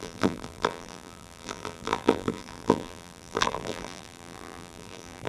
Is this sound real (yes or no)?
no